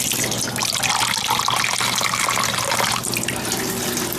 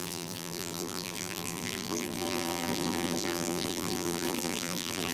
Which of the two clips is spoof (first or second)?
second